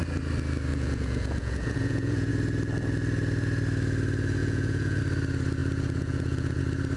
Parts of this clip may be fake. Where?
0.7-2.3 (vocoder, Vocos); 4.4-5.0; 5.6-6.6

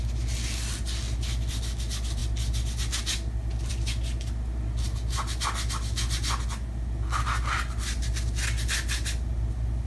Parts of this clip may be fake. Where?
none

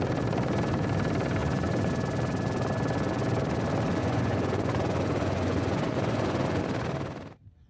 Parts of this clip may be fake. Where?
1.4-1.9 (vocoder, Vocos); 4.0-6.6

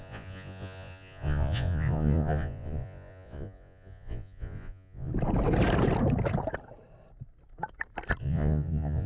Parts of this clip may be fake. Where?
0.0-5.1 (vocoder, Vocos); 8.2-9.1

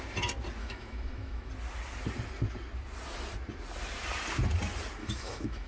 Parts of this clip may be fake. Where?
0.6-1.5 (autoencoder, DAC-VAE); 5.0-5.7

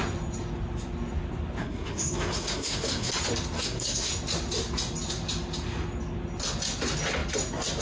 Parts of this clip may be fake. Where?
1.6-3.1 (codec, SNAC); 3.6-4.1